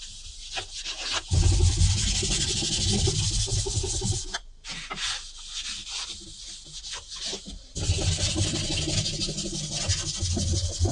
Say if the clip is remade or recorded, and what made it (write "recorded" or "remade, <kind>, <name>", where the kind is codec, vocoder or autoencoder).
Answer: recorded